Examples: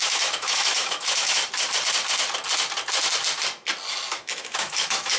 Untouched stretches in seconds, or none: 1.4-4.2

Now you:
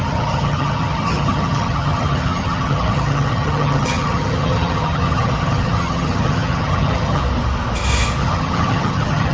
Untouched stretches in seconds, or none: 7.2-8.2